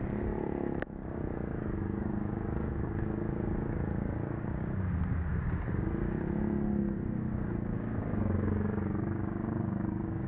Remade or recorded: remade